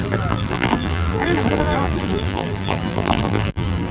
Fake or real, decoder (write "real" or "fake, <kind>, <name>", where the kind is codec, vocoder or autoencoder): fake, vocoder, BigVGAN v2